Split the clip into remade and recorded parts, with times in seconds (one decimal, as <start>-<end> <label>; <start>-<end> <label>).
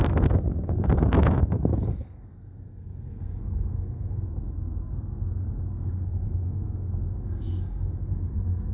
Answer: 0.0-8.7 remade